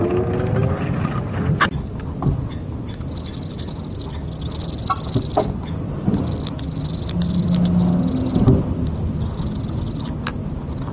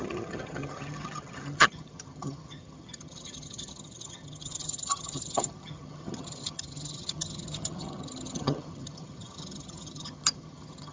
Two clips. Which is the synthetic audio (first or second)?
second